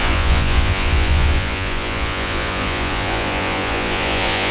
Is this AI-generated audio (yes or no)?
yes